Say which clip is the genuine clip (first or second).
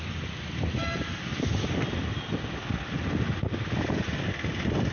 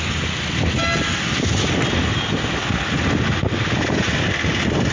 second